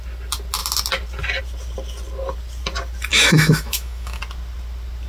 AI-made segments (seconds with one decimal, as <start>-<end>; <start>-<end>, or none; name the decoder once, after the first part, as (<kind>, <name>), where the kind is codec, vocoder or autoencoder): 3.1-4.2 (autoencoder, DAC-VAE)